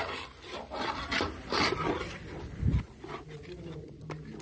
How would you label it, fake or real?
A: real